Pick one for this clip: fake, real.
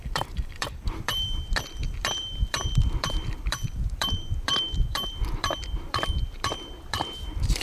fake